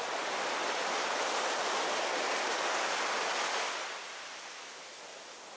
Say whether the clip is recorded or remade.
recorded